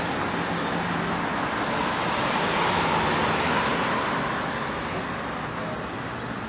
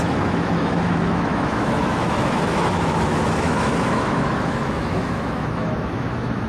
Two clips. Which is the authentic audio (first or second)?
first